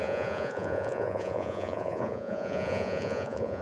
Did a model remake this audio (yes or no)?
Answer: yes